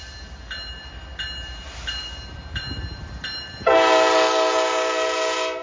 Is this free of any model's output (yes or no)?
yes